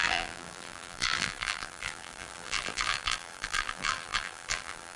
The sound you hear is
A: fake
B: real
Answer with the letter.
A